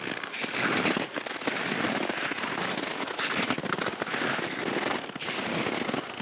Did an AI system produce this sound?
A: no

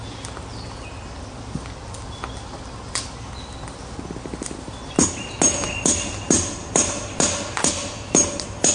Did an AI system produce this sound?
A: no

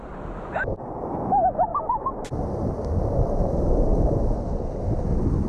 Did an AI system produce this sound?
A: no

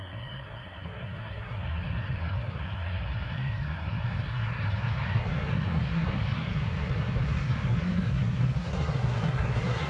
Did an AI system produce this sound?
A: yes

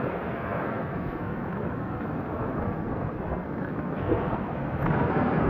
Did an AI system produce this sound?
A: yes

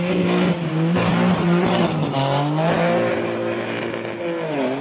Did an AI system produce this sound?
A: no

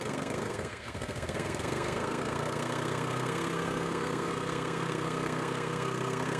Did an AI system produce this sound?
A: yes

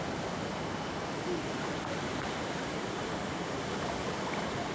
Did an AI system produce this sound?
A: no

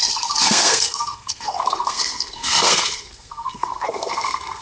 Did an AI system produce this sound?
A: yes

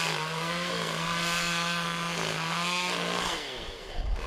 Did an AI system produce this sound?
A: yes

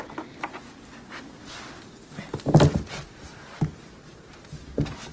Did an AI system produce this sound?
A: no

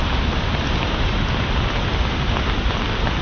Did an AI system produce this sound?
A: no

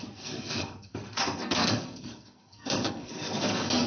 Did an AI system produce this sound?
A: yes